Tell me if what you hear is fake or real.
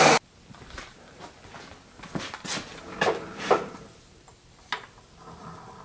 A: real